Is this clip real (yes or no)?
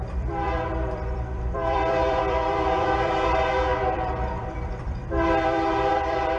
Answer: no